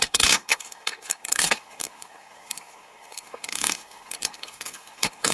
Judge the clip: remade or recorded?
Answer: remade